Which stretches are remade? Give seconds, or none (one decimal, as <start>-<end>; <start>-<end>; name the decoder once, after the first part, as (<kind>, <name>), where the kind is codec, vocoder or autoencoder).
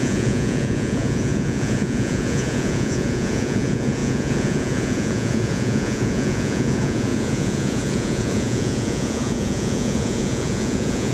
0.0-11.1 (vocoder, Vocos)